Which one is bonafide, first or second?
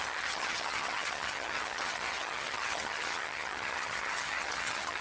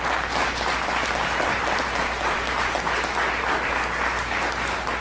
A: second